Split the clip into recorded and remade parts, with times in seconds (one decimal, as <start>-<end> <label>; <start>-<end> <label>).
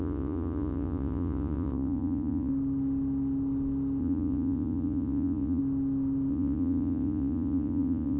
0.0-2.5 remade; 2.5-4.0 recorded; 4.0-5.6 remade; 5.6-6.3 recorded; 6.3-8.2 remade